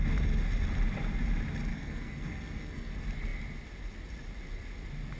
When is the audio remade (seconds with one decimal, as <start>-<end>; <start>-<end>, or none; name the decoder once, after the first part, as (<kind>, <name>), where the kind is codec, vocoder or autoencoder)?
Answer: 1.7-2.9 (codec, SNAC)